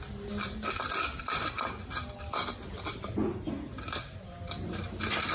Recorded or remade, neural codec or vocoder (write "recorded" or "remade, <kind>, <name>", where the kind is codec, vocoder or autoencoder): recorded